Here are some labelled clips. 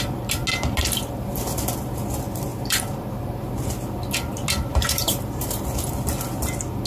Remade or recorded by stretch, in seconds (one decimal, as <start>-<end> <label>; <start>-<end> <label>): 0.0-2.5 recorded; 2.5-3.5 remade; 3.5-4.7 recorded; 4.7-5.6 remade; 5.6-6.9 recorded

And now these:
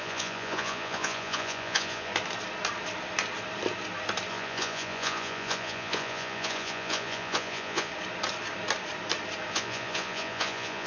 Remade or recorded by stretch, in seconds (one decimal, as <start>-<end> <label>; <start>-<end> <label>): 0.0-2.1 remade; 2.1-4.3 recorded; 4.3-7.9 remade; 7.9-9.5 recorded; 9.5-10.9 remade

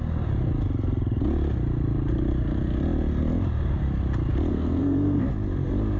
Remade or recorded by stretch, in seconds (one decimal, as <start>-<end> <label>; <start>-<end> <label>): 0.0-4.5 recorded; 4.5-5.2 remade; 5.2-6.0 recorded

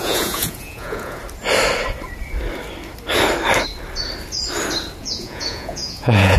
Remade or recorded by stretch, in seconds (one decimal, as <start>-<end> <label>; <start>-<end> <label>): 0.0-1.2 remade; 1.2-5.0 recorded; 5.0-6.4 remade

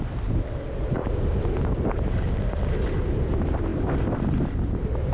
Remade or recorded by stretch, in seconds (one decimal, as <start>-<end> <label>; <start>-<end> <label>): 0.0-5.1 recorded

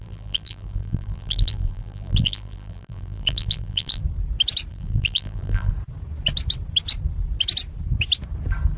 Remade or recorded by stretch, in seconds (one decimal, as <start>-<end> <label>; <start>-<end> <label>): 0.0-4.0 remade; 4.0-4.7 recorded; 4.7-5.7 remade; 5.7-8.8 recorded

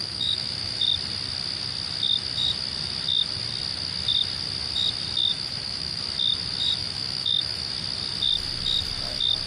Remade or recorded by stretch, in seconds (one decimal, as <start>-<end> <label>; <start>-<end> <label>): 0.0-0.8 remade; 0.8-5.3 recorded; 5.3-6.0 remade; 6.0-6.8 recorded; 6.8-7.7 remade; 7.7-9.5 recorded